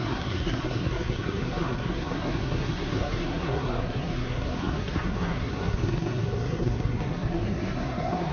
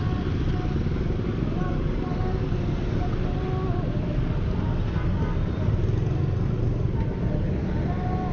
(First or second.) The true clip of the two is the second